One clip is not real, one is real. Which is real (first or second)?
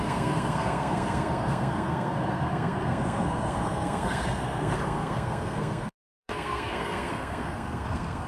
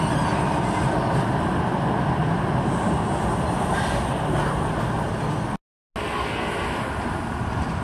second